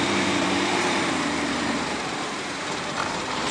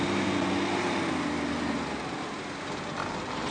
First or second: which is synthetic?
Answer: first